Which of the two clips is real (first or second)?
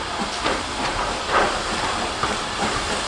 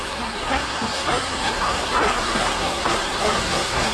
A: first